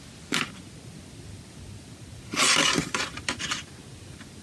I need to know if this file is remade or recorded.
recorded